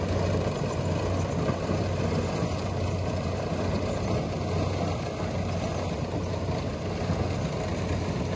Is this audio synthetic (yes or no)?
no